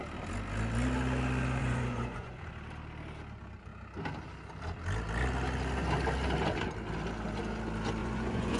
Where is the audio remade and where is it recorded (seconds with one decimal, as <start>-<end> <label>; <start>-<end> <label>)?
0.0-1.6 recorded; 1.6-2.5 remade; 2.5-8.0 recorded; 8.0-8.6 remade